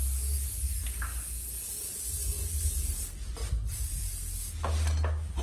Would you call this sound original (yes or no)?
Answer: yes